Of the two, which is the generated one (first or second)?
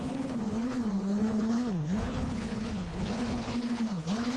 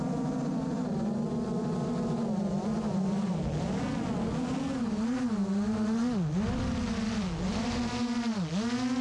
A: first